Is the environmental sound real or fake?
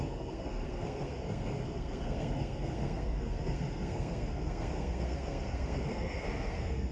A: fake